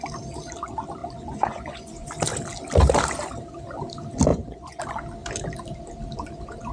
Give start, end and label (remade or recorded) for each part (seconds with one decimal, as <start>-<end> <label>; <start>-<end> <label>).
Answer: 0.0-1.0 recorded; 1.0-2.1 remade; 2.1-4.3 recorded; 4.3-4.8 remade; 4.8-6.7 recorded

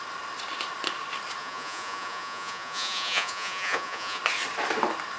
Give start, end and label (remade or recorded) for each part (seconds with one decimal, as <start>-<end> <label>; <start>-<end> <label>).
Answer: 0.0-1.4 recorded; 1.4-4.2 remade; 4.2-5.2 recorded

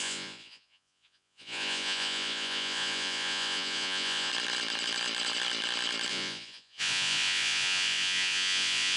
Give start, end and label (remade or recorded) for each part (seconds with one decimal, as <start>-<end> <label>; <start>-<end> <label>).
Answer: 0.0-4.3 remade; 4.3-6.1 recorded; 6.1-9.0 remade

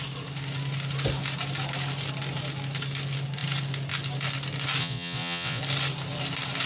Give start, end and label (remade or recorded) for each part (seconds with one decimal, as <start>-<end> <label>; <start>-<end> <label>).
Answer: 0.0-4.8 recorded; 4.8-5.6 remade; 5.6-6.7 recorded